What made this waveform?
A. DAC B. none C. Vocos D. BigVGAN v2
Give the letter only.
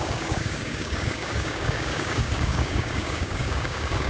A